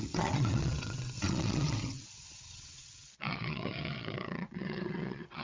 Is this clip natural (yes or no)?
no